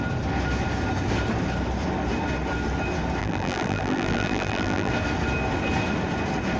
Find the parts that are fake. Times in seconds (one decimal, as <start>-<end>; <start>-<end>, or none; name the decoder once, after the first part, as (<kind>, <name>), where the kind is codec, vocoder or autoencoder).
3.2-4.9 (vocoder, BigVGAN v2)